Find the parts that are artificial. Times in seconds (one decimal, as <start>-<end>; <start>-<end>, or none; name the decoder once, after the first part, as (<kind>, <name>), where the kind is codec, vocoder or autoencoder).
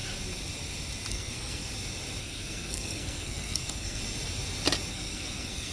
1.1-1.6 (codec, SNAC); 2.2-4.0; 4.9-5.7